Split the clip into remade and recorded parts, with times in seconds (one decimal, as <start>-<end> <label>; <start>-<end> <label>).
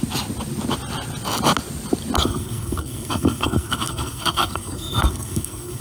0.0-2.2 recorded; 2.2-5.8 remade